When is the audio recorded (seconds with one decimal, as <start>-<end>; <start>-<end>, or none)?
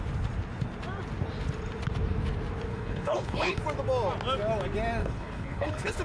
0.0-2.7; 3.6-5.0